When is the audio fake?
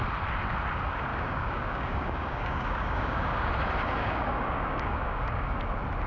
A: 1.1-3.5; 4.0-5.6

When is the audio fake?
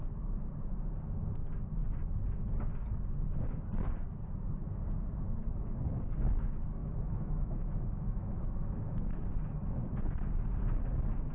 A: 6.8-9.3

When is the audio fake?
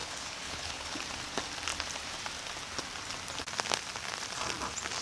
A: 0.0-1.0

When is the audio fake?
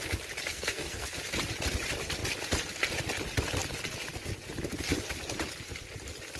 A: 0.5-1.2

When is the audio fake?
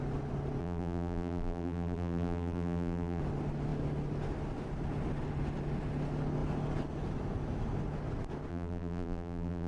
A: 0.6-3.2; 8.5-9.7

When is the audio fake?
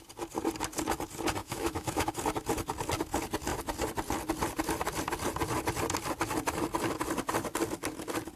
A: 1.4-2.1